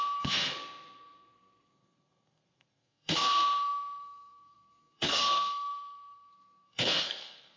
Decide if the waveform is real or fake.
fake